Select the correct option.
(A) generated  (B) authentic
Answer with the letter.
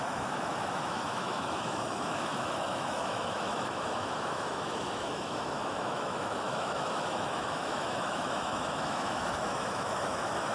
A